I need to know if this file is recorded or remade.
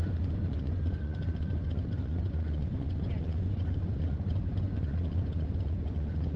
remade